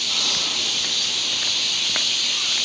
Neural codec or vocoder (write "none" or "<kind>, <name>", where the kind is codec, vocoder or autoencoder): none